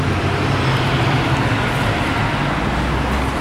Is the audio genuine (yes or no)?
yes